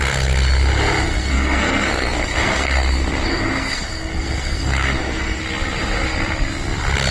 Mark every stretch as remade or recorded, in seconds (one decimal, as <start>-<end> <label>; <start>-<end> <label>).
0.0-1.1 recorded; 1.1-5.4 remade; 5.4-7.1 recorded